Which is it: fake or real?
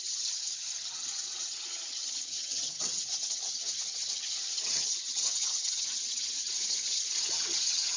fake